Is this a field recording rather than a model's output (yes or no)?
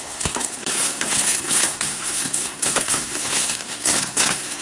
no